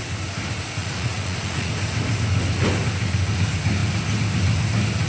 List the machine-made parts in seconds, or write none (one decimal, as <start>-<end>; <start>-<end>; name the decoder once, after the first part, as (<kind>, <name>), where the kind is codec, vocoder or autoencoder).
0.8-1.7 (vocoder, Vocos)